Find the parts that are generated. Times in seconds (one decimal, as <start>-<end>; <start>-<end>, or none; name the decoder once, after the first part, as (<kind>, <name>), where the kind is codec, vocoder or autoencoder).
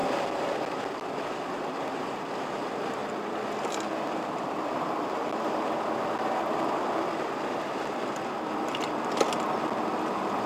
none